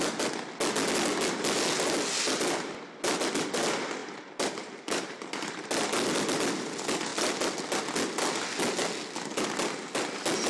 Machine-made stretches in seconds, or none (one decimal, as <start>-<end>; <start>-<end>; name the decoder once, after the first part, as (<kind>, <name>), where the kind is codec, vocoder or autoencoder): 4.0-5.7 (vocoder, BigVGAN v2)